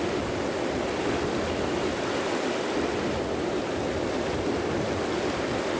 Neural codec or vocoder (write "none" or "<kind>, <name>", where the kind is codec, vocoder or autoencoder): none